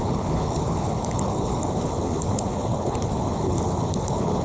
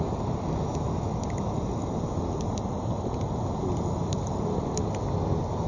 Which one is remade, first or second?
first